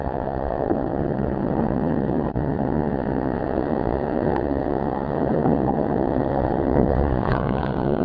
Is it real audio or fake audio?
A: fake